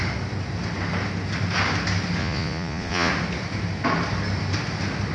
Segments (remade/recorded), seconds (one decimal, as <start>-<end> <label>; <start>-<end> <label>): 0.0-2.2 recorded; 2.2-3.1 remade; 3.1-5.1 recorded